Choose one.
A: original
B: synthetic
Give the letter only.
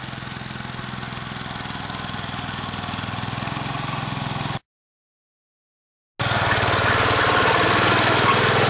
A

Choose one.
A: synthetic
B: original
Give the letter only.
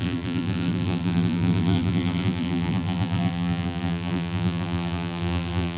A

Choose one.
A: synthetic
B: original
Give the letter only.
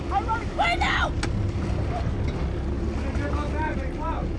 B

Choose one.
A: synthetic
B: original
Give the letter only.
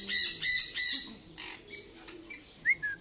B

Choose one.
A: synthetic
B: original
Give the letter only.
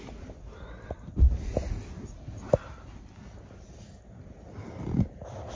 B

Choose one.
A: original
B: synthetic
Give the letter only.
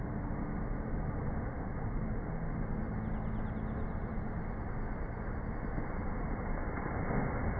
A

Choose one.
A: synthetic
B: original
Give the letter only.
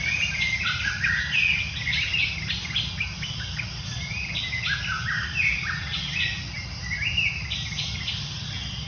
B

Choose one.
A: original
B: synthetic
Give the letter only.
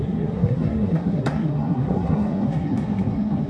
B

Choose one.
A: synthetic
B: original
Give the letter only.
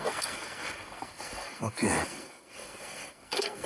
A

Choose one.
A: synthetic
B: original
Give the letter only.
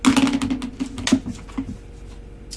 B